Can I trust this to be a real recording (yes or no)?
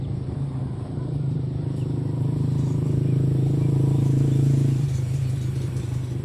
no